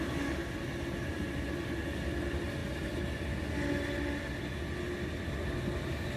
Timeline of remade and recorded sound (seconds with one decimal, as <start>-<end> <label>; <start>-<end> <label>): 0.0-6.2 recorded